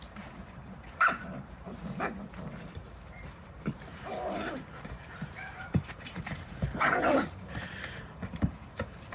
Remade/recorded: remade